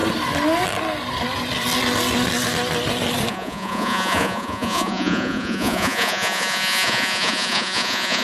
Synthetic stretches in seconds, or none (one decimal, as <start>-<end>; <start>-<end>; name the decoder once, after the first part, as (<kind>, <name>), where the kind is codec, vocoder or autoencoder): 3.3-8.2 (vocoder, Vocos)